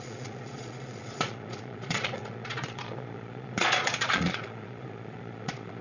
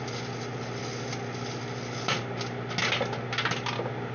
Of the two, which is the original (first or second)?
second